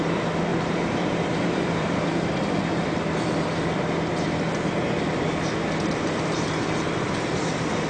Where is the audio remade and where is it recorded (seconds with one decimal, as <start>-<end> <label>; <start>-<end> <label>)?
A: 0.0-0.5 recorded; 0.5-2.5 remade; 2.5-7.9 recorded